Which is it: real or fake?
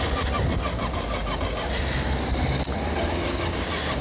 real